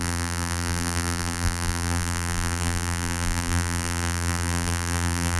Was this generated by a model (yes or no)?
yes